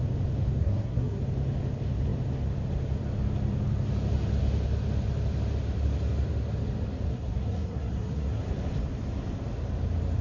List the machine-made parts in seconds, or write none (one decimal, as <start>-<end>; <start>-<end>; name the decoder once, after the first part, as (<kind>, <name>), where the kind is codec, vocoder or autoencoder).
0.6-1.2 (codec, SNAC); 7.1-8.4

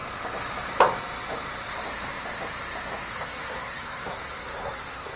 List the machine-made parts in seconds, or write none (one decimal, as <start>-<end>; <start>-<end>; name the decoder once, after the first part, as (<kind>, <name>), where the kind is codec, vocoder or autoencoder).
3.1-5.2 (codec, SNAC)